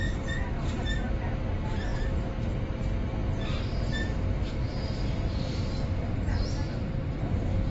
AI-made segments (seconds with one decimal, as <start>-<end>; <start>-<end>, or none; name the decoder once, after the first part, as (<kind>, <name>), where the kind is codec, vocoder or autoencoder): none